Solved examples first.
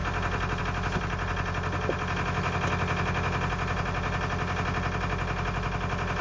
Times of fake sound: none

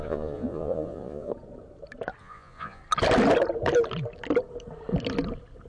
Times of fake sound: 0.0-1.3 (vocoder, Vocos); 2.2-2.8